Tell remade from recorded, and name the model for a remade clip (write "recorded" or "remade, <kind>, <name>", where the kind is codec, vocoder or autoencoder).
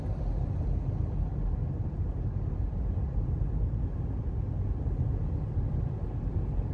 recorded